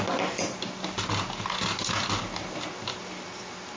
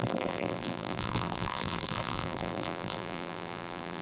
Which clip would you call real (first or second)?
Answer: first